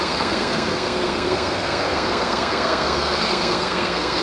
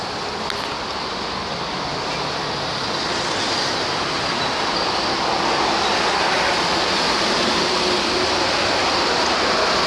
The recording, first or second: second